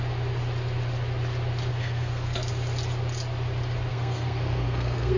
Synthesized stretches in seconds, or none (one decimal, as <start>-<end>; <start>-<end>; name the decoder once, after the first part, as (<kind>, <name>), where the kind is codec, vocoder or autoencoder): 1.7-2.5 (codec, SNAC); 3.9-5.2